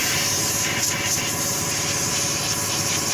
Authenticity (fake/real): real